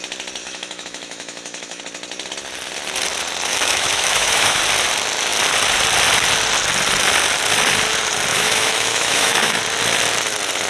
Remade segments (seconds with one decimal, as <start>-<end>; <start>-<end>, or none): 0.4-1.8; 3.5-4.6; 8.3-9.6